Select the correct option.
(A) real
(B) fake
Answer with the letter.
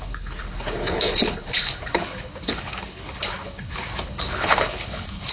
B